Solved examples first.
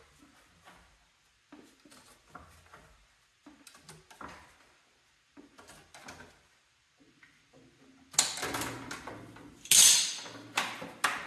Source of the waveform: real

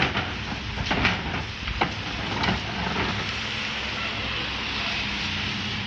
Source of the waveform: real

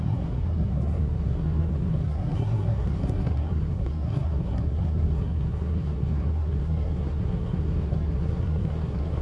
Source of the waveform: fake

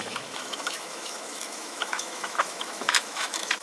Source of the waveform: fake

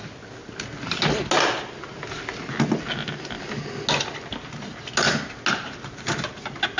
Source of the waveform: real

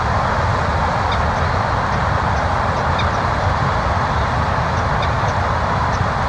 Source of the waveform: real